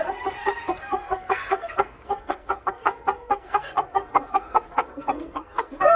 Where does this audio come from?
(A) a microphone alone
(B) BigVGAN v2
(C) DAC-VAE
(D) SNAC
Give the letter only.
D